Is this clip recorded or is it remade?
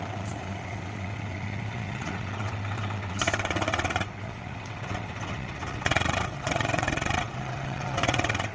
remade